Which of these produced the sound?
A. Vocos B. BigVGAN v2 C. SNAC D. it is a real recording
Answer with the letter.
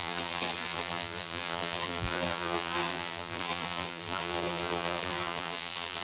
B